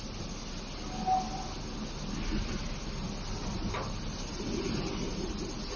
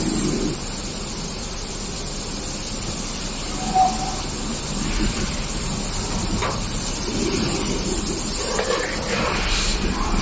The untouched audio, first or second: first